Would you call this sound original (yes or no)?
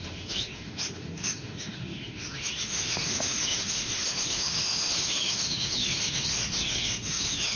no